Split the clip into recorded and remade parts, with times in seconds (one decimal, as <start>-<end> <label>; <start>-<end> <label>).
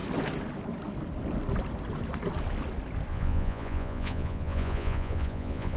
0.0-3.1 recorded; 3.1-5.8 remade